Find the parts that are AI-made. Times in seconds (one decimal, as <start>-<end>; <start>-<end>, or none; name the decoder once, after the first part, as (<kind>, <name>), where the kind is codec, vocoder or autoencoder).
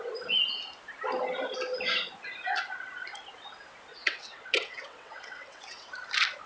3.9-5.9 (vocoder, WaveNeXt)